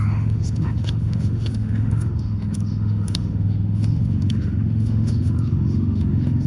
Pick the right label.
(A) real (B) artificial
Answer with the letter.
B